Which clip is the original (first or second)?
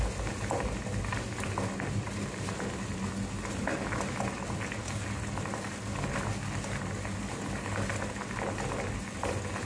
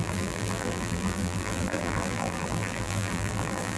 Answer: first